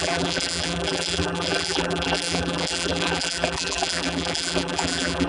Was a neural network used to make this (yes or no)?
yes